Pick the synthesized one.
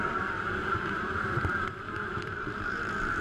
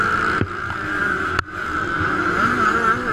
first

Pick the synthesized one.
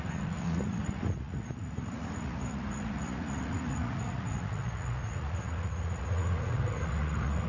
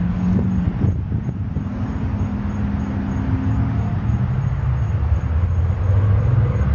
first